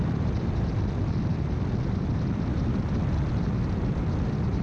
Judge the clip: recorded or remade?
remade